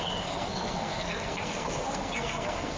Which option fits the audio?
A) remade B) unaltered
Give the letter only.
A